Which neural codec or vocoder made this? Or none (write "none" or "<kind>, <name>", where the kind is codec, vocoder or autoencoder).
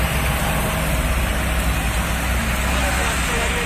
none